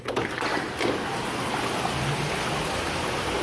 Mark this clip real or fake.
real